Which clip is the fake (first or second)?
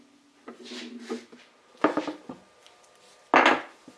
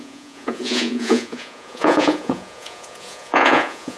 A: second